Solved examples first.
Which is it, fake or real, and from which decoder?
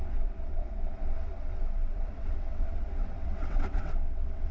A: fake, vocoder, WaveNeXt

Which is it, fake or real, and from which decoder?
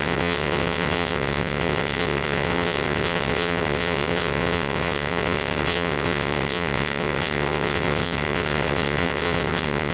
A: fake, vocoder, WaveNeXt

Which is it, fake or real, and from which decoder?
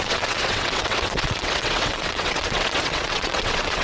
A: fake, vocoder, WaveNeXt